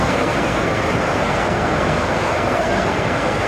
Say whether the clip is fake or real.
fake